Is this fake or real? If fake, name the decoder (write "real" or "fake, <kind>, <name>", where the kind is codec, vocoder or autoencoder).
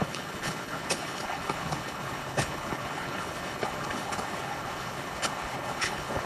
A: fake, codec, HILCodec